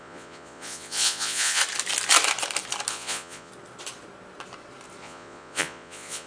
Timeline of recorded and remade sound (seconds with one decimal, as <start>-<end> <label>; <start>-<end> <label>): 0.0-1.6 remade; 1.6-2.9 recorded; 2.9-3.5 remade; 3.5-5.0 recorded; 5.0-6.3 remade